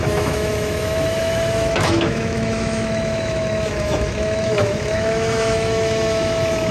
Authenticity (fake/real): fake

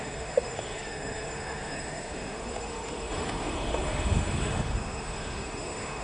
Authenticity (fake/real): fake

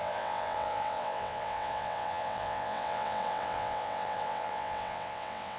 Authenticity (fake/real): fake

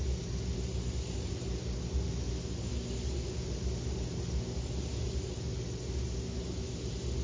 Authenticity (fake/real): real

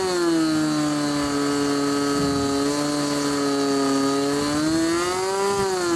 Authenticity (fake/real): real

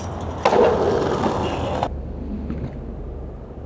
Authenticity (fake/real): real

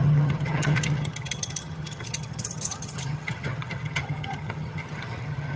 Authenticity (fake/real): fake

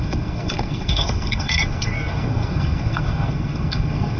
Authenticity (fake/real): fake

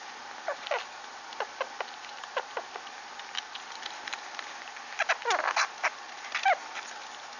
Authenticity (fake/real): real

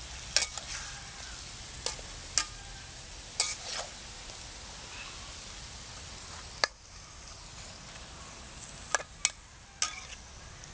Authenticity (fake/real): real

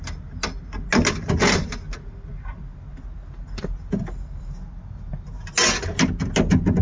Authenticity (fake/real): real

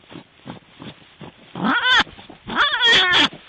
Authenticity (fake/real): real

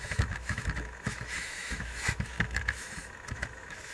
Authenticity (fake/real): fake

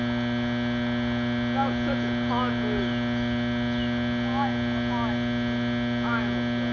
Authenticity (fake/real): real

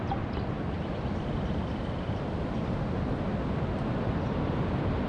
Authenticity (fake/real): real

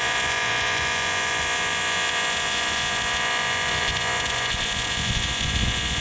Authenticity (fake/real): fake